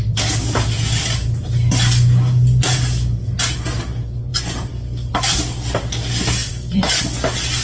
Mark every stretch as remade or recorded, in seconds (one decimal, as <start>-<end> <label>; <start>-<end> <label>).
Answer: 0.0-4.3 recorded; 4.3-5.1 remade; 5.1-6.4 recorded; 6.4-7.0 remade; 7.0-7.6 recorded